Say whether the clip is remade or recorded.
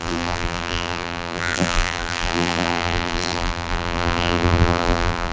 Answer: remade